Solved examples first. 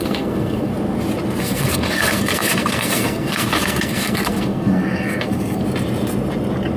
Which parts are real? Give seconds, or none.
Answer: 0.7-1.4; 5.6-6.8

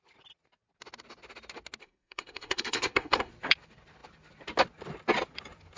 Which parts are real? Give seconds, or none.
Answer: 0.0-1.8; 3.3-5.8

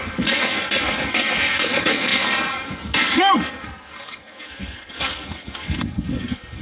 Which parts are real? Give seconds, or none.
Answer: none

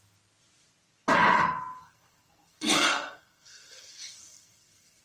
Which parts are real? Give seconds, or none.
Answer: 0.0-1.7

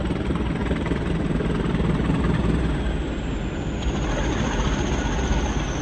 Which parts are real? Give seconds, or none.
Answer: 0.0-5.8

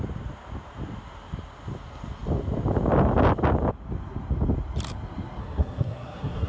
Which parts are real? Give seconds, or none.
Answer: 0.0-5.4

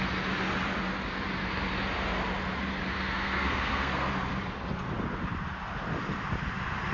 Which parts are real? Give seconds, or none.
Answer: 0.0-2.9; 4.1-6.9